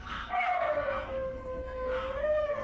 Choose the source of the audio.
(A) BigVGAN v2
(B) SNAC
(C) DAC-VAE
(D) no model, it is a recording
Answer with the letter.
B